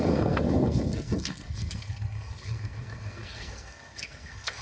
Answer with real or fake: fake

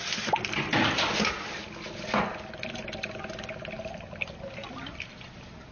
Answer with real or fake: real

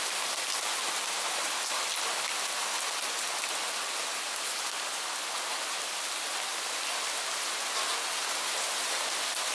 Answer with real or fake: real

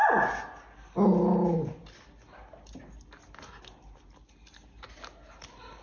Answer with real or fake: real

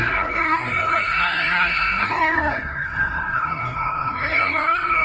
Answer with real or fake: fake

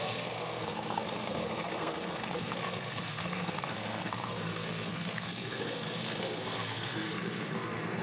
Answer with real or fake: fake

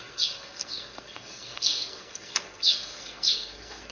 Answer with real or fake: fake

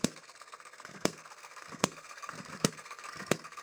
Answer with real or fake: fake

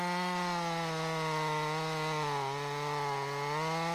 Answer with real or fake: real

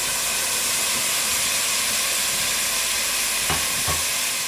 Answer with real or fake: real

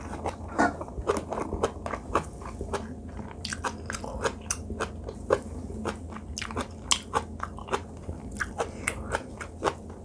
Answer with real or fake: real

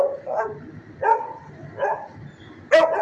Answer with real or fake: real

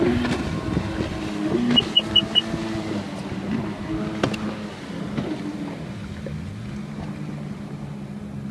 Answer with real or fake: real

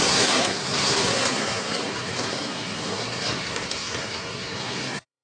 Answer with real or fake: fake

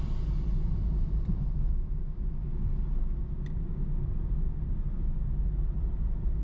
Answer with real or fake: real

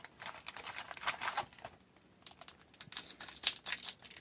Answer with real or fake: real